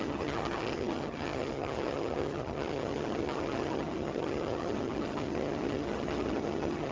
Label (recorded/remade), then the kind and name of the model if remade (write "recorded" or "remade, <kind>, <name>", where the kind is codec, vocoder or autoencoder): remade, vocoder, HiFi-GAN